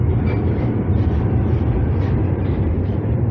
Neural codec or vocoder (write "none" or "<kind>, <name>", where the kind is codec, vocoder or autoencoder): vocoder, BigVGAN v2